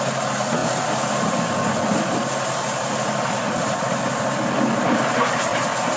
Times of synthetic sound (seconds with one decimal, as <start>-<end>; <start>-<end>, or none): none